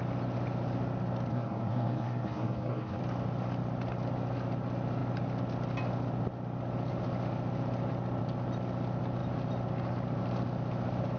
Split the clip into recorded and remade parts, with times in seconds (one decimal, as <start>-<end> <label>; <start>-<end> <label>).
0.0-1.3 recorded; 1.3-3.0 remade; 3.0-11.2 recorded